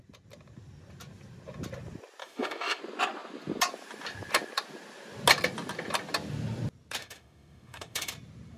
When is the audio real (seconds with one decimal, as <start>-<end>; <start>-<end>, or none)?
0.0-2.2; 2.8-7.0; 8.1-8.6